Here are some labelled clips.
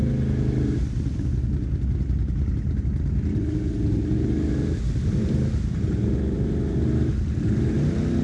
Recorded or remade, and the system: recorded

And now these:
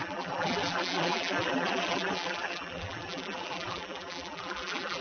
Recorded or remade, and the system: remade, vocoder, BigVGAN v2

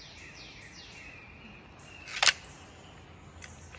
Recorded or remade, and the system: recorded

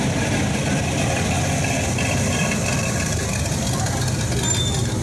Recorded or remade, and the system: recorded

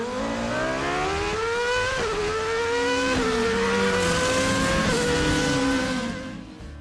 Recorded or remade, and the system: recorded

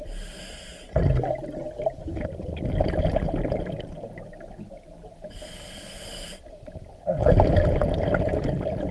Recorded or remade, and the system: recorded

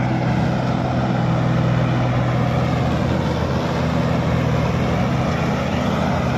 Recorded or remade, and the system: recorded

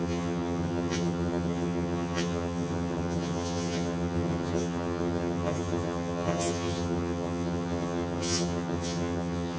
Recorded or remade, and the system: remade, vocoder, HiFi-GAN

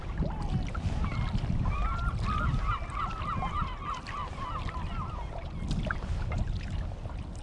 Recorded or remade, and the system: recorded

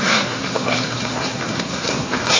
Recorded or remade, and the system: remade, codec, SNAC